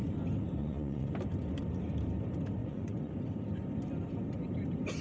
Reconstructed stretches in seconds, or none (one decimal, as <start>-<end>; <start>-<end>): 0.6-1.1; 2.6-3.1